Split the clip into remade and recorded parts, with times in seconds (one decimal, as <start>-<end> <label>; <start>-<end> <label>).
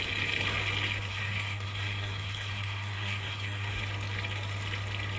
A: 0.0-1.1 recorded; 1.1-3.8 remade; 3.8-5.2 recorded